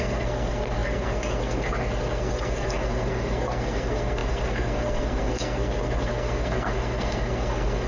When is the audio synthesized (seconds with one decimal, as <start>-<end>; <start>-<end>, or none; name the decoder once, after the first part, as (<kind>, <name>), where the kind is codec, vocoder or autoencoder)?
0.0-7.9 (codec, SNAC)